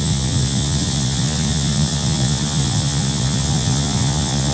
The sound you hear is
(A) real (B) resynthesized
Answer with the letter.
B